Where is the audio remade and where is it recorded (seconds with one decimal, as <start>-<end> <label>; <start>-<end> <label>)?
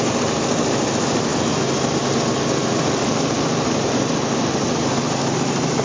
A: 0.0-5.8 recorded